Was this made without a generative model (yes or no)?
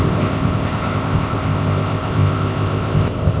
no